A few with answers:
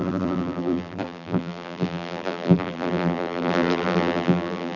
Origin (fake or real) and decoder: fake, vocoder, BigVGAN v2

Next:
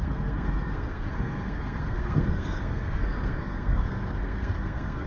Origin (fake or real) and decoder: fake, codec, SNAC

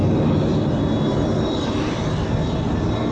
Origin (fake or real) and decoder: real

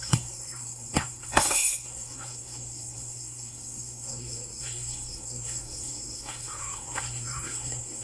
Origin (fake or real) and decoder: fake, codec, SNAC